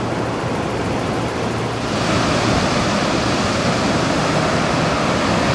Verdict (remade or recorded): recorded